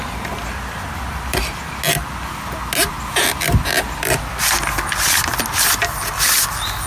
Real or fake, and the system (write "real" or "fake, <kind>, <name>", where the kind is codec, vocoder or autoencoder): real